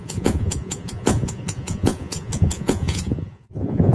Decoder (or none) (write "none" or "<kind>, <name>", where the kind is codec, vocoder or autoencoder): vocoder, Vocos